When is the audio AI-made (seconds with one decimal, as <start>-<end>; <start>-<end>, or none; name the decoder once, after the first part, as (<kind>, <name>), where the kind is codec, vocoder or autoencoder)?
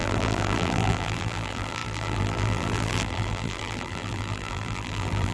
0.0-5.3 (vocoder, BigVGAN v2)